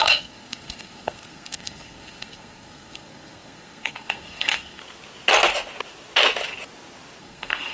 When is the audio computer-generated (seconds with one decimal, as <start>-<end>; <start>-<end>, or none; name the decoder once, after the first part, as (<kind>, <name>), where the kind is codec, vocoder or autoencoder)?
0.0-4.8 (codec, SNAC); 7.2-7.7